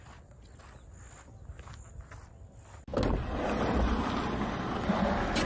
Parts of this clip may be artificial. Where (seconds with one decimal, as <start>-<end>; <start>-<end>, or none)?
none